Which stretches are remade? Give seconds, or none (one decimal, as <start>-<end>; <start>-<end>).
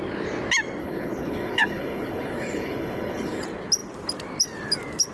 0.8-3.4